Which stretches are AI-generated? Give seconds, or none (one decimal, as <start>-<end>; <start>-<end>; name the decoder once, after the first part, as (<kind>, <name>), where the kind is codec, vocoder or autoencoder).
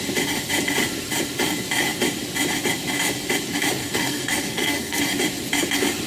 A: 3.8-5.0 (codec, SNAC)